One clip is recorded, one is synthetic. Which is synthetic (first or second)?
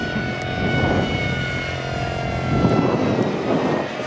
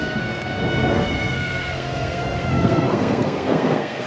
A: second